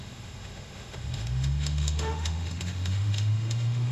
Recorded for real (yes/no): no